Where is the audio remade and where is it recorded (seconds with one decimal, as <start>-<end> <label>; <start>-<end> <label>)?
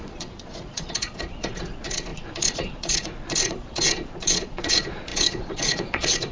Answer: 0.0-6.3 remade